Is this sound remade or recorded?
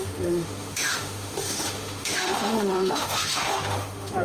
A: remade